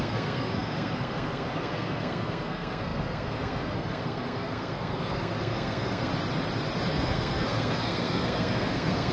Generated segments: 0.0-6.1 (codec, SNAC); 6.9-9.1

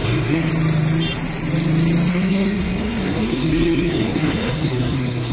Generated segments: 0.0-0.5 (codec, SNAC); 2.1-5.3

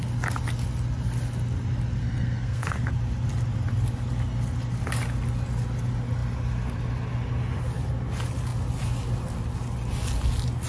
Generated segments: 2.0-2.9 (codec, SNAC)

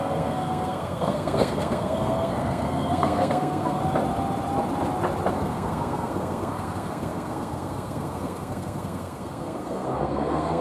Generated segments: 0.0-3.8 (codec, SNAC); 5.3-10.6